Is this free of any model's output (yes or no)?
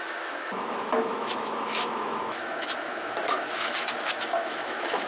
no